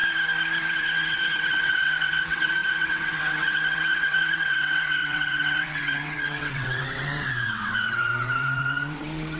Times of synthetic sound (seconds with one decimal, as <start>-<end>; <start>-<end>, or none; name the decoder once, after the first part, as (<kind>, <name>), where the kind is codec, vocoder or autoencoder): 0.8-9.4 (vocoder, WaveNeXt)